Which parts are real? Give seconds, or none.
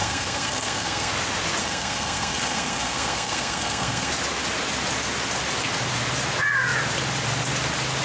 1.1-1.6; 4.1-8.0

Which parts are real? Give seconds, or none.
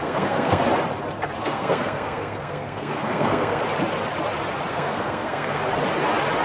0.6-1.4; 3.6-4.7; 5.6-6.4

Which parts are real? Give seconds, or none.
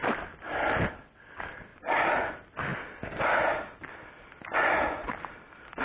0.0-1.7; 2.3-4.5; 5.1-5.8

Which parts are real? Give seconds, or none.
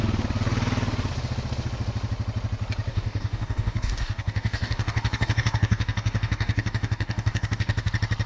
0.0-2.9; 7.9-8.3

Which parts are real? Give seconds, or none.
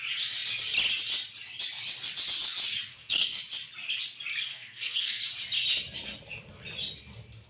0.0-2.9; 3.4-4.5; 5.2-7.5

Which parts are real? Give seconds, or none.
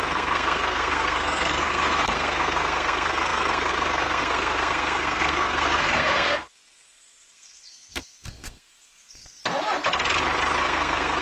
9.4-10.6